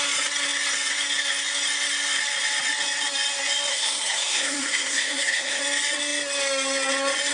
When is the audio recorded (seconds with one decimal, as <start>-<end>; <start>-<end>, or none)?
0.0-3.7; 5.6-7.3